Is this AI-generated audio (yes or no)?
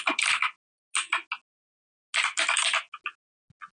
no